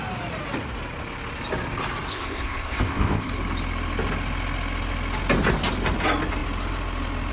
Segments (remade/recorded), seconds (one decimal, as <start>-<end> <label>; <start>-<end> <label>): 0.0-2.1 recorded; 2.1-3.3 remade; 3.3-7.3 recorded